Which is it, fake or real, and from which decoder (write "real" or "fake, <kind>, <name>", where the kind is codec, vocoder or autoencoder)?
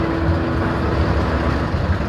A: real